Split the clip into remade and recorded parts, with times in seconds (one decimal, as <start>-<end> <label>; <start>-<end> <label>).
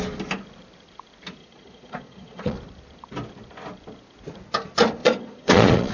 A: 0.0-1.4 recorded; 1.4-2.6 remade; 2.6-5.0 recorded; 5.0-5.9 remade